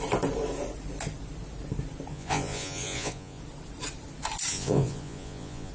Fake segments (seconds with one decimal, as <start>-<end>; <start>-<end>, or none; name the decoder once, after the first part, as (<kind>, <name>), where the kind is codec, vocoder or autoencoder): 2.1-3.4 (vocoder, Vocos); 4.5-5.7